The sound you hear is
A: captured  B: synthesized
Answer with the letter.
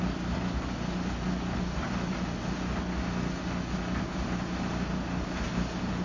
A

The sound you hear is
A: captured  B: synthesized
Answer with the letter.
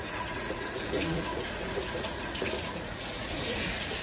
B